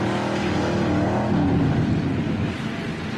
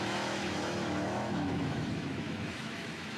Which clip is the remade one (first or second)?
second